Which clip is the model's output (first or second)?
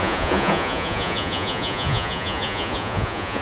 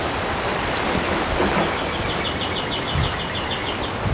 first